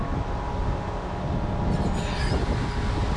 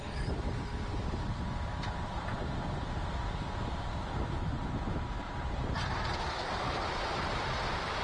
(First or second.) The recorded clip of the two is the first